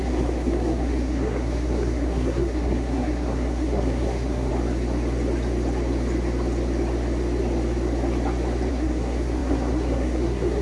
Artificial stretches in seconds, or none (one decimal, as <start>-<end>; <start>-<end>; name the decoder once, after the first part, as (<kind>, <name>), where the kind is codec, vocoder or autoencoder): 0.0-4.5 (codec, SNAC); 8.7-10.6